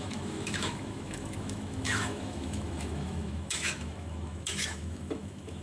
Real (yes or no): no